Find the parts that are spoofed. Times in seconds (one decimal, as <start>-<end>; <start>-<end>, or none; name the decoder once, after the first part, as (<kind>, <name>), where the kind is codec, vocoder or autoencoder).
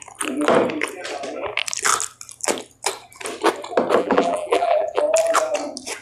4.0-5.0 (vocoder, BigVGAN v2)